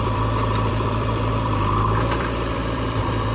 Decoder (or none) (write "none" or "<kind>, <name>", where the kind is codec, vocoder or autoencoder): vocoder, BigVGAN v2